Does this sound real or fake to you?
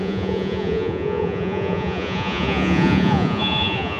fake